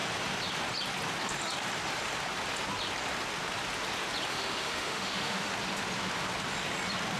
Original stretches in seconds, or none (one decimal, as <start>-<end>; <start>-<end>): 0.0-4.3; 5.5-7.2